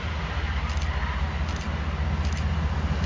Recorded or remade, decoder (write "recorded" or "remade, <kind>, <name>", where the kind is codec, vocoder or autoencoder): recorded